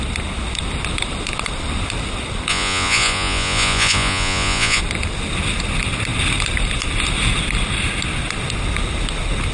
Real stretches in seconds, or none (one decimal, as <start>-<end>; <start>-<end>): 0.0-2.5; 4.8-9.5